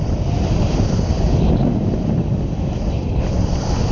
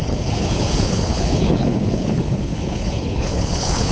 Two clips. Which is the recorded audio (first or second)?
first